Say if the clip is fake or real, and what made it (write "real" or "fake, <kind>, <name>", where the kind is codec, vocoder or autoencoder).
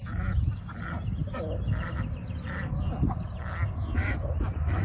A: real